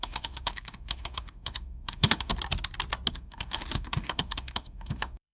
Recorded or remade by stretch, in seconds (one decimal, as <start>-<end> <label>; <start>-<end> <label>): 0.0-2.3 remade; 2.3-3.1 recorded; 3.1-5.3 remade